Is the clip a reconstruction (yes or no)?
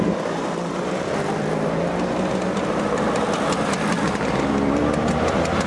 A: yes